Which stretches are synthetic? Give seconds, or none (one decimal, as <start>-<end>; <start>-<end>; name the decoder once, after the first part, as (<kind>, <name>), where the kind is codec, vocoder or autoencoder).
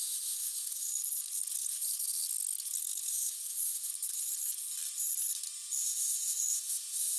0.0-0.9 (autoencoder, DAC-VAE); 3.1-3.9; 5.8-7.2